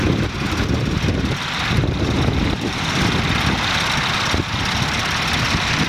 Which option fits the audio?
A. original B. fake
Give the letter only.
B